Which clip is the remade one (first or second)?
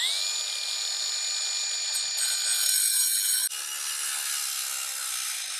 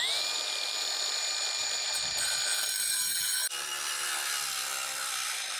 second